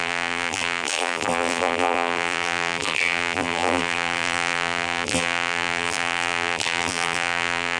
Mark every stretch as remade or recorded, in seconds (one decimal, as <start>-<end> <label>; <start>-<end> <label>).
0.0-7.8 remade